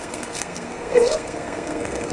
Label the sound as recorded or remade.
remade